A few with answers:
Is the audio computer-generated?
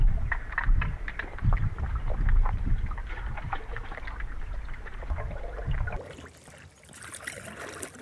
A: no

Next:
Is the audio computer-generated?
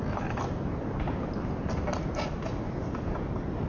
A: no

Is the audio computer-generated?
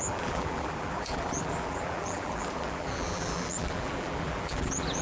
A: yes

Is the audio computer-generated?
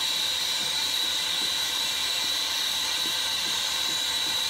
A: yes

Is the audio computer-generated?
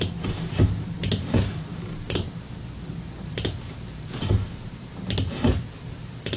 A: no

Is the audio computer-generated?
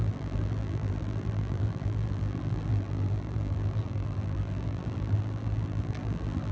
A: yes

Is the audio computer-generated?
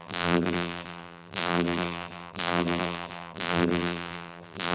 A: yes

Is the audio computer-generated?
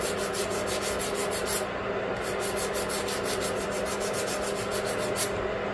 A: no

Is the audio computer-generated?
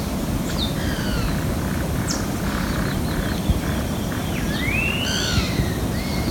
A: no